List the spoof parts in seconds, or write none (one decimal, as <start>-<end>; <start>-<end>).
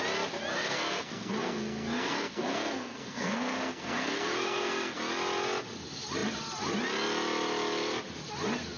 0.5-5.0